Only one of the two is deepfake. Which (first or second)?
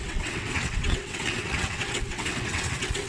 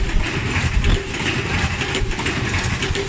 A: first